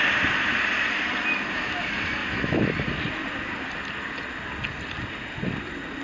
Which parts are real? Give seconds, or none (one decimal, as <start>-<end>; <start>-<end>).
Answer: 0.0-2.2; 2.7-6.0